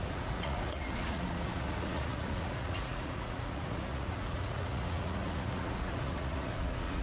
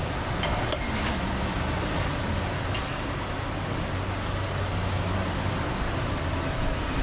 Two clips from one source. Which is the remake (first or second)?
first